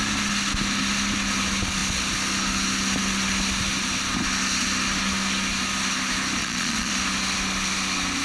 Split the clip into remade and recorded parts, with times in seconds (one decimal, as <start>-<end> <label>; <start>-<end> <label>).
0.0-6.4 recorded; 6.4-6.9 remade; 6.9-8.2 recorded